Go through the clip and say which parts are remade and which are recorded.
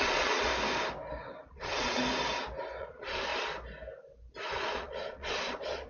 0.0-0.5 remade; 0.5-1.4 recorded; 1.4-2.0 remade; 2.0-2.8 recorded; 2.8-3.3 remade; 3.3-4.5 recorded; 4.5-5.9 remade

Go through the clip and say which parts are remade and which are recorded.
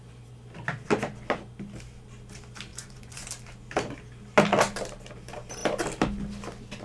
0.0-2.7 recorded; 2.7-3.3 remade; 3.3-6.8 recorded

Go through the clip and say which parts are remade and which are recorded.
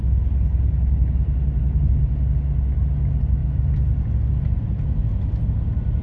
0.0-6.0 recorded